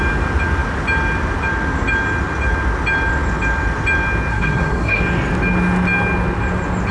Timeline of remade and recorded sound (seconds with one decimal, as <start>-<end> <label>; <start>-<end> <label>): 0.0-4.3 recorded; 4.3-5.0 remade; 5.0-6.9 recorded